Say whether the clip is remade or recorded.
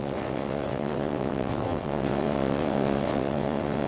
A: remade